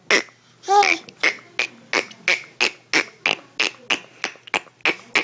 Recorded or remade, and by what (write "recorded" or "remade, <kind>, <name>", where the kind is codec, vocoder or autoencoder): recorded